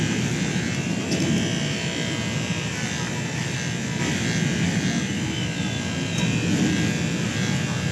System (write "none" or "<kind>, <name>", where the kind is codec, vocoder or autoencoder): none